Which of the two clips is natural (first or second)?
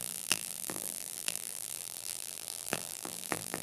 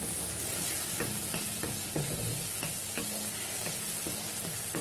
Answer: second